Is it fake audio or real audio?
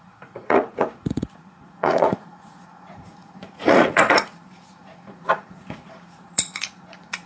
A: fake